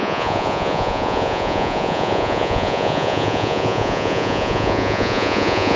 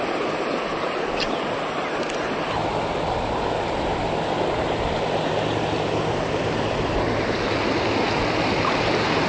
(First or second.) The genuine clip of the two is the second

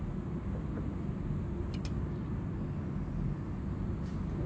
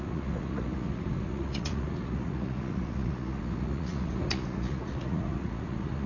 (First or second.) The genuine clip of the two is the first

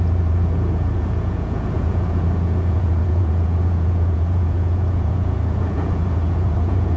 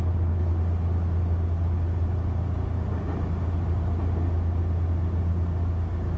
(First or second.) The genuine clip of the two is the second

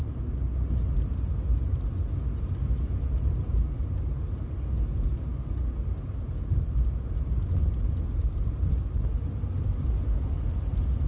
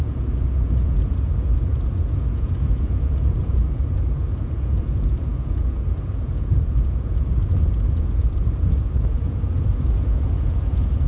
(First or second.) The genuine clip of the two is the first